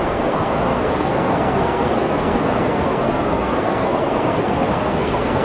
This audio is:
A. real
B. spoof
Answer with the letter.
B